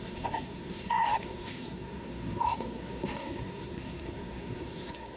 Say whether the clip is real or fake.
fake